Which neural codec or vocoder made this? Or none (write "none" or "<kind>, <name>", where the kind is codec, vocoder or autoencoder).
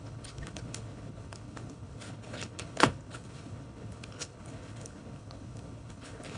codec, HILCodec